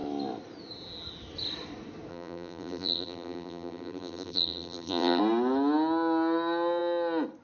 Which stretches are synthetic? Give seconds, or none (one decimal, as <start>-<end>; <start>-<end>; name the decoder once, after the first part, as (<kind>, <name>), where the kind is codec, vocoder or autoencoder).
2.1-5.2 (vocoder, BigVGAN v2)